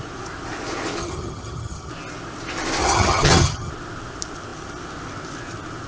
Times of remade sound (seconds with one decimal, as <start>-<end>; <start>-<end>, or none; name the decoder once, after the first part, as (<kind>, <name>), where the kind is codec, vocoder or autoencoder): 1.0-1.9 (vocoder, HiFi-GAN); 2.8-3.7

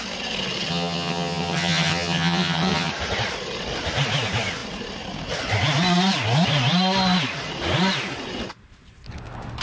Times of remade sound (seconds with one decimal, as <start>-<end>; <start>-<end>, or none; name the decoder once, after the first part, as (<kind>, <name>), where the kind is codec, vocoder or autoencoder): 0.7-2.9 (vocoder, HiFi-GAN)

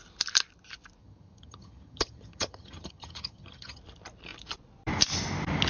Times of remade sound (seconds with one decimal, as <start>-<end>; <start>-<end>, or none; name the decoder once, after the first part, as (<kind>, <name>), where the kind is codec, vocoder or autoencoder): 1.0-3.8 (vocoder, HiFi-GAN)

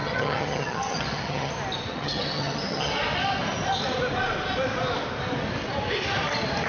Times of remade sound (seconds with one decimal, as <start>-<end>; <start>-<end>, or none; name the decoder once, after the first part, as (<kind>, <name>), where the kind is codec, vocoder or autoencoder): 0.0-1.5 (vocoder, HiFi-GAN); 1.9-2.9

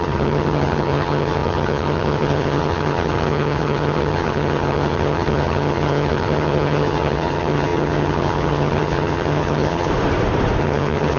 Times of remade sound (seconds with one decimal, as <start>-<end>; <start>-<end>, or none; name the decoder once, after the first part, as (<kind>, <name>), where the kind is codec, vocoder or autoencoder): 0.0-9.9 (vocoder, HiFi-GAN); 10.6-11.2

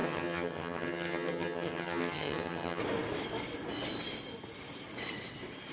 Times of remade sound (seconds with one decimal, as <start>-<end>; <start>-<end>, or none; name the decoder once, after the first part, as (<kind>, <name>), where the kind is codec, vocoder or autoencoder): 0.0-2.8 (vocoder, HiFi-GAN)